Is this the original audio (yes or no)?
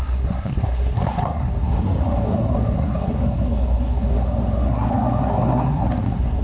no